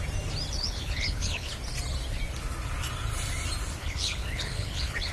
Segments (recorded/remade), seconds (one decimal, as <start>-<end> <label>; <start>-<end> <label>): 0.0-0.6 recorded; 0.6-1.5 remade; 1.5-3.8 recorded; 3.8-5.1 remade